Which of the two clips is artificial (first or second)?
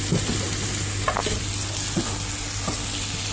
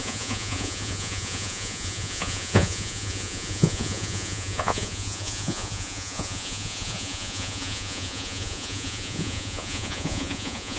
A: second